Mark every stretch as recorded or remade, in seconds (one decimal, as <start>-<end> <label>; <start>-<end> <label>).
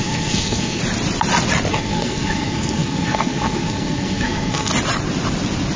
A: 0.0-0.8 remade; 0.8-1.7 recorded; 1.7-4.7 remade; 4.7-5.8 recorded